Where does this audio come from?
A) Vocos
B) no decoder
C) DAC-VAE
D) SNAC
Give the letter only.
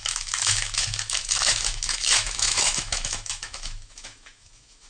C